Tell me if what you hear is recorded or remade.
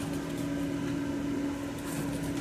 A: recorded